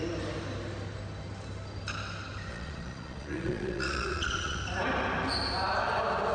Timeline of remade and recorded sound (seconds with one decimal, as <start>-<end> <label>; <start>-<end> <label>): 0.0-2.5 recorded; 2.5-4.6 remade; 4.6-6.3 recorded